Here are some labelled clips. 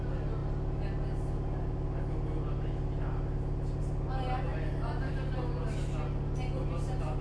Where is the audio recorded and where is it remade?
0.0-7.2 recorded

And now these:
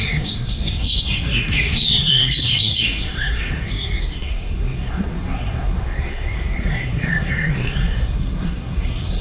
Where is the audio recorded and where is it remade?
0.0-9.2 remade

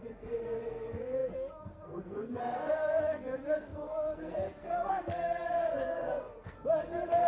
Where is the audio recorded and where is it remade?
0.0-7.3 remade